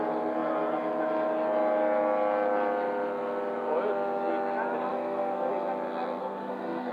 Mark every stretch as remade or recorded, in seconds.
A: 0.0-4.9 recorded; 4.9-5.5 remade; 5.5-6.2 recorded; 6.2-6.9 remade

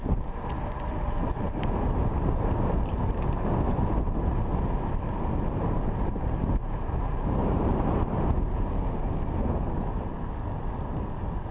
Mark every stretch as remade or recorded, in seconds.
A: 0.0-11.5 recorded

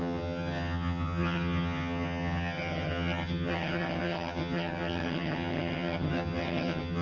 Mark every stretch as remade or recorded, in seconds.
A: 0.0-7.0 remade

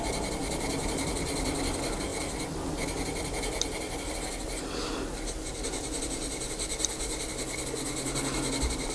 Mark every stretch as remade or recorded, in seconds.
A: 0.0-8.9 recorded

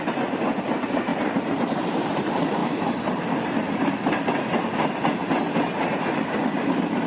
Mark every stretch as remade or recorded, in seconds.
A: 0.0-1.1 recorded; 1.1-2.0 remade; 2.0-2.6 recorded; 2.6-4.2 remade; 4.2-7.1 recorded